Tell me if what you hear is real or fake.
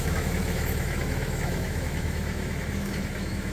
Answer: fake